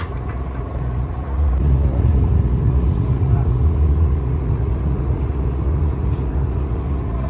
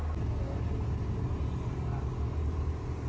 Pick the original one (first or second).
second